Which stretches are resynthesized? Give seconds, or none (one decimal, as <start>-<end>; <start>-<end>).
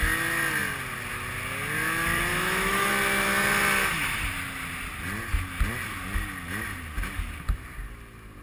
2.3-2.9; 3.8-4.3